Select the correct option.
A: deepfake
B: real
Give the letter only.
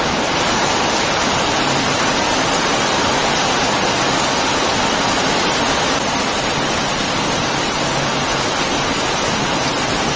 B